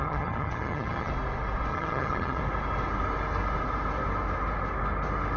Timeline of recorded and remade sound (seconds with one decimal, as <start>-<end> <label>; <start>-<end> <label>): 0.0-1.1 remade; 1.1-1.7 recorded; 1.7-2.4 remade; 2.4-5.4 recorded